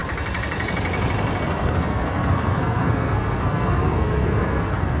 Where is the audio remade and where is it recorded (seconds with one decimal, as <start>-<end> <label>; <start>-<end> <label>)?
0.0-1.4 recorded; 1.4-5.0 remade